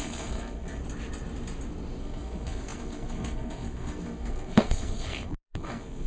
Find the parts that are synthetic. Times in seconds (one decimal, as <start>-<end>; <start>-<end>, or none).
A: 0.0-0.8; 2.0-6.1